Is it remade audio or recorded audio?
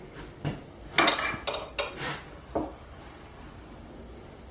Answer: recorded